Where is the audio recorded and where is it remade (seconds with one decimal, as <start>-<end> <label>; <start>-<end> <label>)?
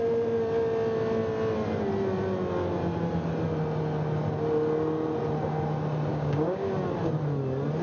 0.0-6.1 recorded; 6.1-6.7 remade; 6.7-7.8 recorded